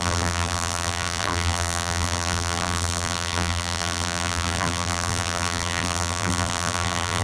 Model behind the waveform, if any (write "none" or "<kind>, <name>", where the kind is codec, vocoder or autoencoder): vocoder, BigVGAN v2